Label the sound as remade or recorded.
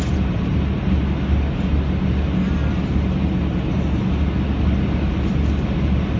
recorded